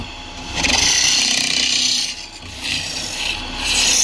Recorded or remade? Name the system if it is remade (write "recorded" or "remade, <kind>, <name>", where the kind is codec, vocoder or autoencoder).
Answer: recorded